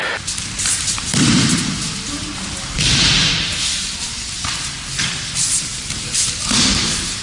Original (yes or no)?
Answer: no